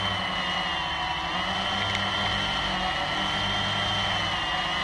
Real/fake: real